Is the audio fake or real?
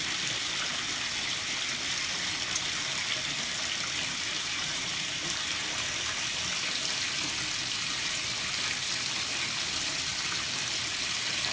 fake